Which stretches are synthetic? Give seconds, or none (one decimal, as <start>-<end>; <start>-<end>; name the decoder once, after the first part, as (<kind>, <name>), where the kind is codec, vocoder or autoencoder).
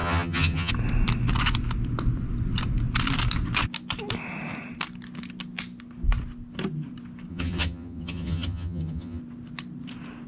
0.0-0.7 (vocoder, HiFi-GAN); 7.3-9.2